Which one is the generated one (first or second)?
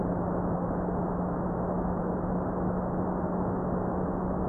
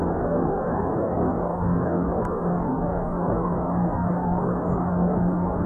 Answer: second